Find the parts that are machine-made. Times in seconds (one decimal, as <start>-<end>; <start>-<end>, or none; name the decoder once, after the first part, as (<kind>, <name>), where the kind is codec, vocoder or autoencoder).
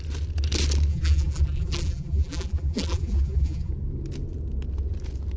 0.9-3.7 (vocoder, BigVGAN v2)